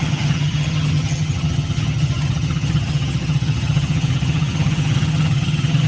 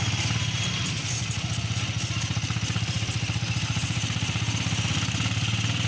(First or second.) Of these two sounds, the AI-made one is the first